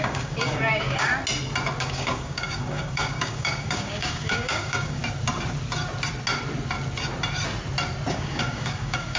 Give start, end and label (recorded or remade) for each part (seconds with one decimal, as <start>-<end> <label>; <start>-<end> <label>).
0.0-1.1 remade; 1.1-1.8 recorded; 1.8-5.0 remade; 5.0-8.1 recorded; 8.1-9.2 remade